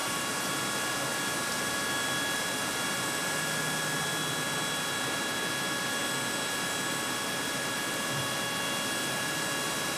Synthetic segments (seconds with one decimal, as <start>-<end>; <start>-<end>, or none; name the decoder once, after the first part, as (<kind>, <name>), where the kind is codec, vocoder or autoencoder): 0.0-0.6 (vocoder, BigVGAN v2)